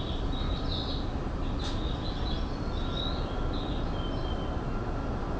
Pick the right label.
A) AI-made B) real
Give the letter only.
B